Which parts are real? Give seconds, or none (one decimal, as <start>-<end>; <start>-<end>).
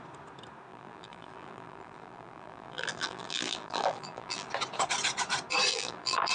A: 0.0-0.7; 4.5-5.7